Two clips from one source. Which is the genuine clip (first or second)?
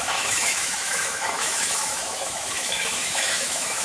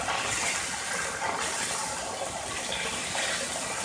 second